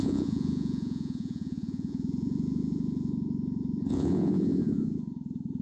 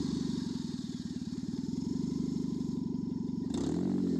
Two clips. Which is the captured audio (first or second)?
second